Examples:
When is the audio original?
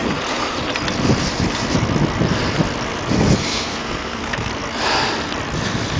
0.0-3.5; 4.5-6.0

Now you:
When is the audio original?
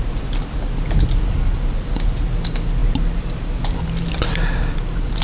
0.0-5.2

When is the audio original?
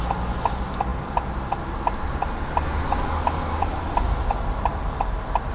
0.0-5.5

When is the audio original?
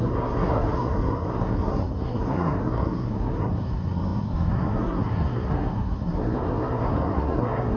none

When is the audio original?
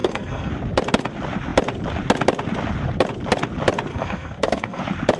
0.5-3.9; 4.8-5.2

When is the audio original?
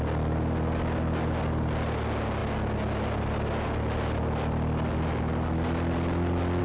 0.0-6.6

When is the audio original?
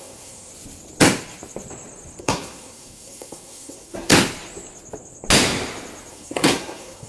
0.5-2.2; 4.1-6.1